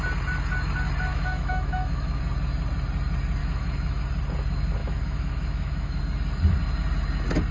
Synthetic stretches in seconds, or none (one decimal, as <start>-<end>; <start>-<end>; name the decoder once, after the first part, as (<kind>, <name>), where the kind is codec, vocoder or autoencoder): 1.1-2.2 (autoencoder, DAC-VAE); 3.4-4.0; 4.8-6.0